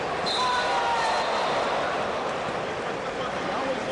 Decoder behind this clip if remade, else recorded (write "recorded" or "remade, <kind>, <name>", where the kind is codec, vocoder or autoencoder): recorded